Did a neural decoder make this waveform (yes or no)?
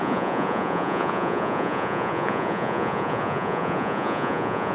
yes